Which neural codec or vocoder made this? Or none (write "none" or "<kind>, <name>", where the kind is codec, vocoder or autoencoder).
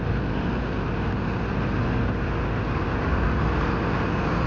none